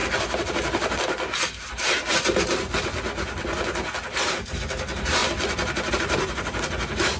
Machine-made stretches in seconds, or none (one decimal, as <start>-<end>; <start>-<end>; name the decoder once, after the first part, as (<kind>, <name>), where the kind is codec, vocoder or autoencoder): 4.3-5.2 (vocoder, BigVGAN v2); 5.9-7.2